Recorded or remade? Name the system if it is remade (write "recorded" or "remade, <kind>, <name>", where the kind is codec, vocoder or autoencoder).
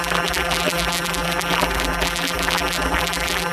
remade, vocoder, BigVGAN v2